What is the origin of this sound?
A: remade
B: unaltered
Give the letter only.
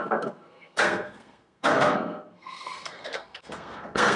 A